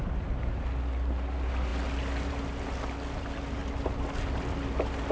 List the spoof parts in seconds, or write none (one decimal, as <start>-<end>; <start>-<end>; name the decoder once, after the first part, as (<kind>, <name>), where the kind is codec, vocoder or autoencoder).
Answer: none